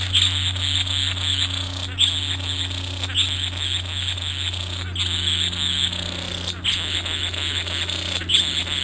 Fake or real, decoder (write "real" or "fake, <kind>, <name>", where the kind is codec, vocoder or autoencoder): real